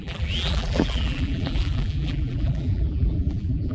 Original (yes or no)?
no